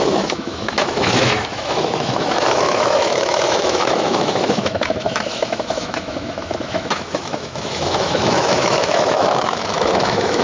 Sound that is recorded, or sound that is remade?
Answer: remade